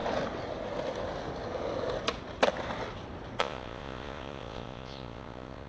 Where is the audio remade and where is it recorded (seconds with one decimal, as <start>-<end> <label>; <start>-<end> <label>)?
0.0-3.4 recorded; 3.4-5.7 remade